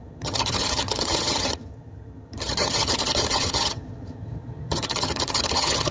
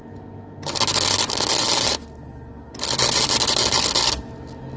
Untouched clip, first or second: second